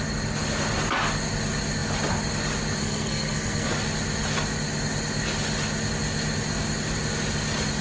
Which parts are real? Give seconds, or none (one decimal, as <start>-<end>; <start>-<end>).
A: 0.0-2.8; 3.7-7.8